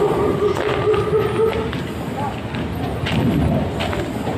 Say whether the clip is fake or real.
real